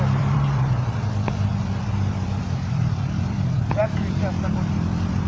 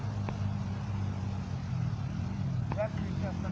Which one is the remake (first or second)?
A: first